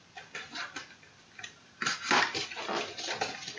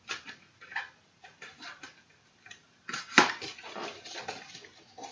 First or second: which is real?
first